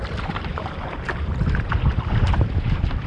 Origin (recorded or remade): remade